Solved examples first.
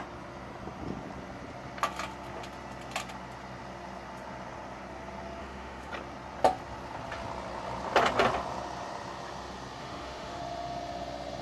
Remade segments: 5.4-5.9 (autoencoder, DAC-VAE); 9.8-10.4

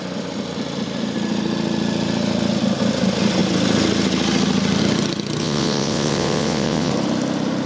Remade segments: 5.4-6.9 (vocoder, WaveNeXt)

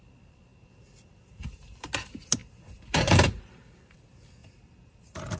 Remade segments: 0.5-1.9 (vocoder, BigVGAN v2); 2.4-3.4; 4.4-5.4